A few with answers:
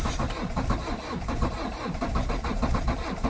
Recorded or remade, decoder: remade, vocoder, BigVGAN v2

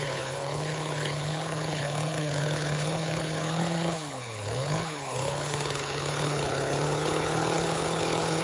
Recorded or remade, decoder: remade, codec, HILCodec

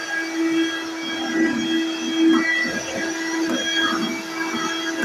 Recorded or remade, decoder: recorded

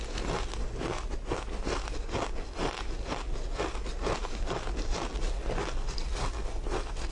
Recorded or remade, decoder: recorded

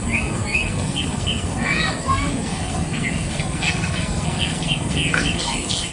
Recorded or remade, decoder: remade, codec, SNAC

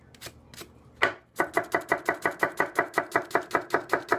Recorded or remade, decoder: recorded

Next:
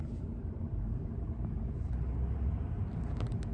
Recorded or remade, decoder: remade, vocoder, BigVGAN v2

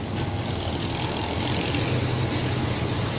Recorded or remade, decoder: recorded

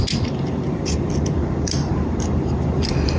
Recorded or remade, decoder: remade, vocoder, BigVGAN v2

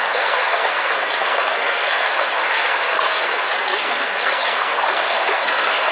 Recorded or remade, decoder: remade, codec, SNAC